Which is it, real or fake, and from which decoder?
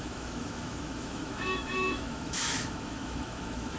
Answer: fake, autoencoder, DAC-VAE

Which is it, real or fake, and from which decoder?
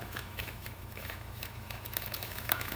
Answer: fake, autoencoder, DAC-VAE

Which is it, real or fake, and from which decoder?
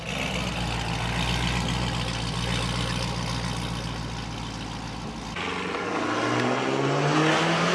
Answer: real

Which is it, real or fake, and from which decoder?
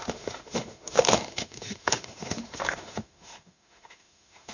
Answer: fake, autoencoder, DAC-VAE